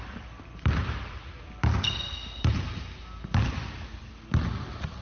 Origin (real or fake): real